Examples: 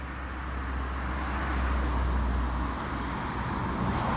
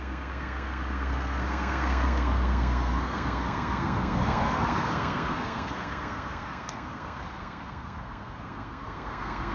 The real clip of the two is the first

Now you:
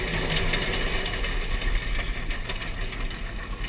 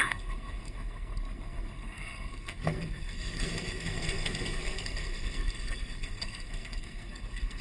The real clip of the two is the first